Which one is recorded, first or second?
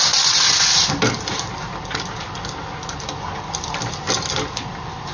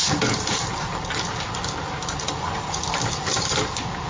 first